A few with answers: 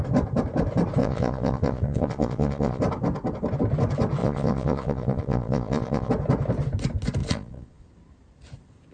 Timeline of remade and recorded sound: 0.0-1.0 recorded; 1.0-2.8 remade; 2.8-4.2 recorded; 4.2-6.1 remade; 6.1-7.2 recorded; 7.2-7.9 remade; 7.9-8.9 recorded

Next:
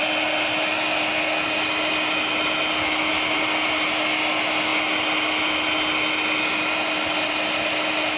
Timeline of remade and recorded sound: 0.0-8.2 recorded

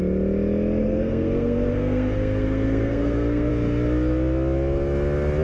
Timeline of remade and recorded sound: 0.0-0.8 recorded; 0.8-3.5 remade; 3.5-5.4 recorded

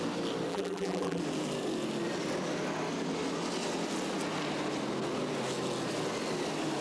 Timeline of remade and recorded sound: 0.0-0.5 recorded; 0.5-1.2 remade; 1.2-6.8 recorded

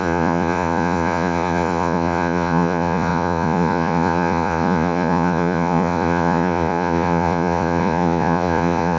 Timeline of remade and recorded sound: 0.0-9.0 remade